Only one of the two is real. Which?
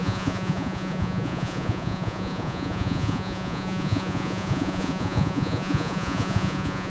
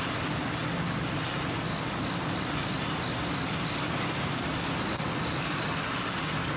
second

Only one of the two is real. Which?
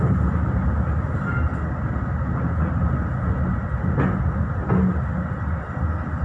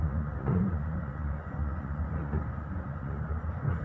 first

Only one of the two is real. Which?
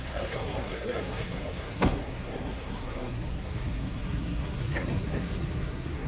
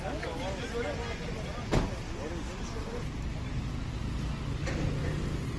second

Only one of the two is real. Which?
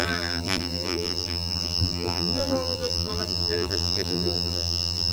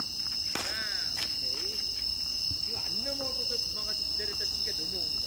second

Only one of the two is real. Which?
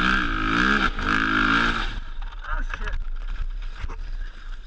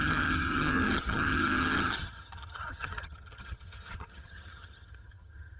first